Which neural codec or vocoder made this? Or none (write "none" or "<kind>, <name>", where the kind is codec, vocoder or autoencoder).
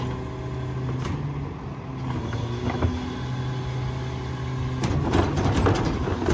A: none